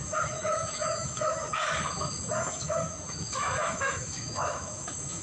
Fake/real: fake